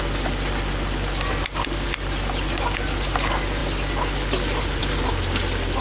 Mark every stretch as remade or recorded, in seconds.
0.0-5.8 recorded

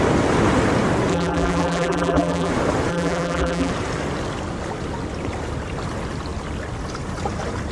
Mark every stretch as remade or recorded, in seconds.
0.0-1.1 recorded; 1.1-2.5 remade; 2.5-2.9 recorded; 2.9-3.7 remade; 3.7-7.7 recorded